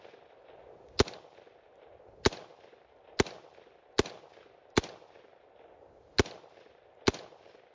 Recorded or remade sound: recorded